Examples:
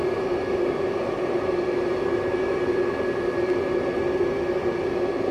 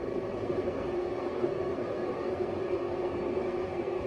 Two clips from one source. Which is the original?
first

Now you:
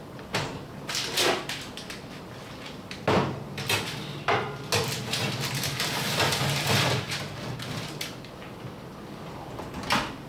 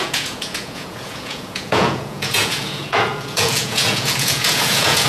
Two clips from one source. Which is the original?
first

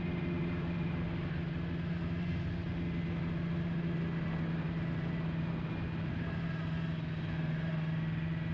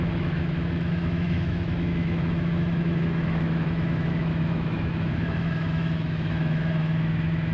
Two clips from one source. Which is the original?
first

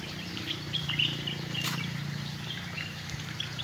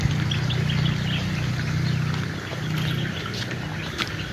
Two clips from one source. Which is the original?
second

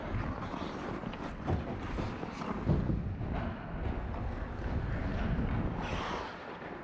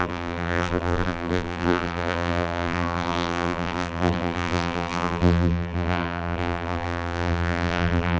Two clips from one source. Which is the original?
first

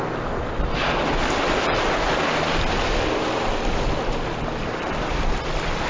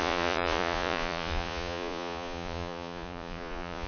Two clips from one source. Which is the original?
first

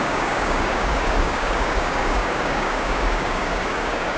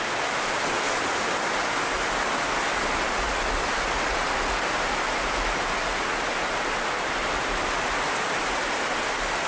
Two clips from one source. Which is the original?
second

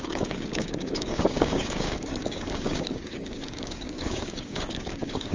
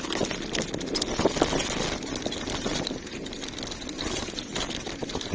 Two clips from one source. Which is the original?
second